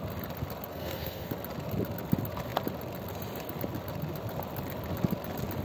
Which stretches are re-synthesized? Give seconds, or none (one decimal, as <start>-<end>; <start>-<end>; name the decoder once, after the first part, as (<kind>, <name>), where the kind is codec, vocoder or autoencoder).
0.7-1.3 (codec, SNAC)